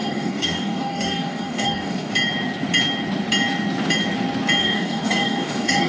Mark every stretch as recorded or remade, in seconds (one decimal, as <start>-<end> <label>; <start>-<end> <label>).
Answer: 0.0-2.1 remade; 2.1-4.6 recorded; 4.6-5.9 remade